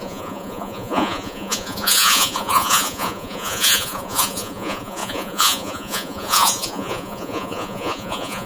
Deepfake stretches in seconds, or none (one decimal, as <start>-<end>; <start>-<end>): 0.0-8.5